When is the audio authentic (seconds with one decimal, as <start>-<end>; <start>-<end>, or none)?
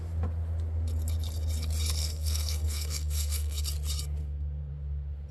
0.0-2.0; 3.6-4.2; 4.7-5.3